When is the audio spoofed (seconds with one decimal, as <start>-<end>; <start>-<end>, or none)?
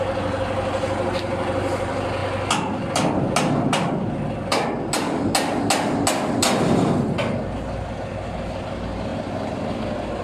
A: none